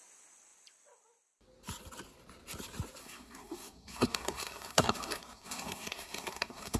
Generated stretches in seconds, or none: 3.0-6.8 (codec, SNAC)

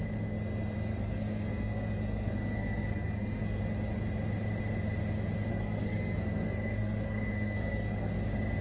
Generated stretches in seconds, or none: 0.9-3.6 (codec, SNAC); 5.5-8.1